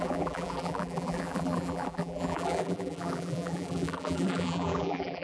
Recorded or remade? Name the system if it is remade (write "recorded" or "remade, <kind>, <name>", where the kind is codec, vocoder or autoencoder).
remade, vocoder, BigVGAN v2